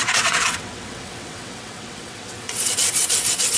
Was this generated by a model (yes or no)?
yes